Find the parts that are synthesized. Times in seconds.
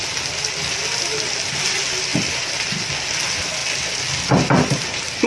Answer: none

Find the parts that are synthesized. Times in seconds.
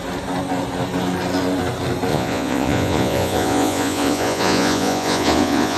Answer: 2.1-5.8 (vocoder, Vocos)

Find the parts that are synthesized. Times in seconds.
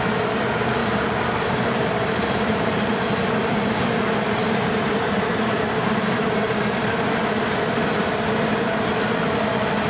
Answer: 0.8-2.6 (vocoder, BigVGAN v2); 4.4-7.2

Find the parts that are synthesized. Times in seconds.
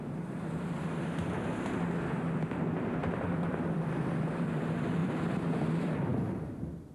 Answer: 3.0-4.6 (vocoder, BigVGAN v2); 5.0-5.6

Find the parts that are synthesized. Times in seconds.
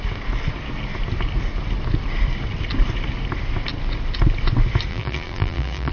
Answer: 4.9-5.9 (vocoder, BigVGAN v2)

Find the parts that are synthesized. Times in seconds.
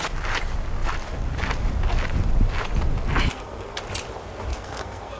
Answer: 3.3-3.8 (codec, SNAC); 4.5-5.2